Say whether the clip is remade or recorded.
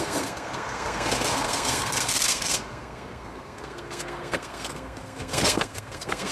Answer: remade